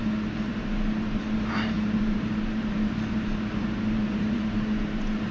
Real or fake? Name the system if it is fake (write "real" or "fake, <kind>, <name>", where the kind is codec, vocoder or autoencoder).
fake, vocoder, BigVGAN v2